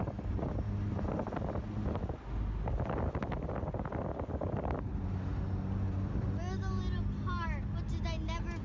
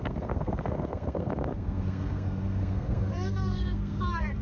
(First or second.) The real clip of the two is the first